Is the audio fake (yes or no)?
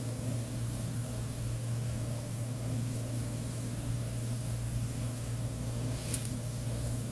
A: yes